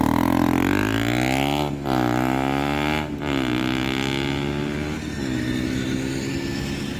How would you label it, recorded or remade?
recorded